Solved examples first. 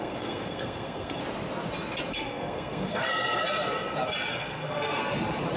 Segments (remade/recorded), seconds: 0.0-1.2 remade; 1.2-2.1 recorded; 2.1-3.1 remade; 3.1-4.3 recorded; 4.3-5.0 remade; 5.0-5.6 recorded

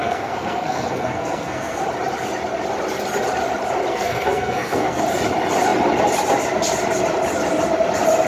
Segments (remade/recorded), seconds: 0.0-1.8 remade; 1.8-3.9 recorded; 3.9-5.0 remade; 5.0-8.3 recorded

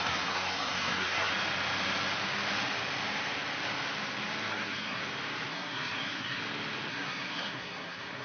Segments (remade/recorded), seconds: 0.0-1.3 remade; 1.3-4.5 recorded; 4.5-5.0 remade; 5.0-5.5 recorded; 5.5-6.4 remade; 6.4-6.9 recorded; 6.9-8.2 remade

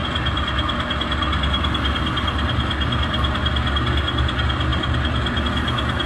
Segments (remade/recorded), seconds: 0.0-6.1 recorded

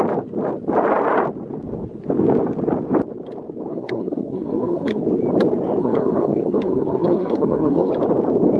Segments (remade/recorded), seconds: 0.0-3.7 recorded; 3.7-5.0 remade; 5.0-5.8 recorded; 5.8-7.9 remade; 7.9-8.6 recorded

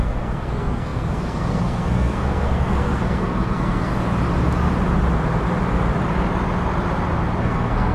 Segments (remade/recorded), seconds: 0.0-3.9 remade; 3.9-7.4 recorded; 7.4-7.9 remade

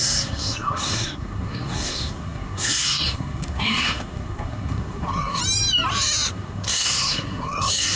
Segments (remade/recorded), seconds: 0.0-5.4 remade; 5.4-6.3 recorded; 6.3-8.0 remade